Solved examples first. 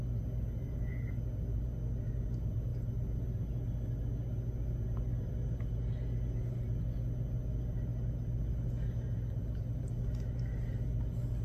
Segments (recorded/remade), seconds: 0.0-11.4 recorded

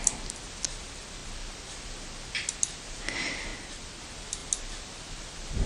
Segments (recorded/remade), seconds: 0.0-5.7 recorded

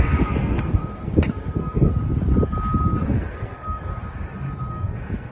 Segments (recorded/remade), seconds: 0.0-1.9 remade; 1.9-3.0 recorded; 3.0-3.9 remade; 3.9-4.7 recorded; 4.7-5.3 remade

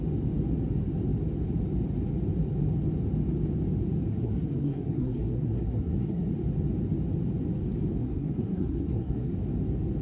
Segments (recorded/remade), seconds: 0.0-4.1 recorded; 4.1-6.3 remade; 6.3-8.0 recorded; 8.0-9.3 remade; 9.3-10.0 recorded